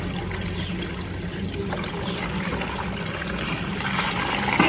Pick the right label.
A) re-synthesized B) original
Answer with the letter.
B